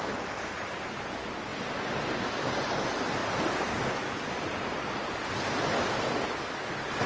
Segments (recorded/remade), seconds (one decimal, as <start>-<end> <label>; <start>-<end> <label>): 0.0-7.1 recorded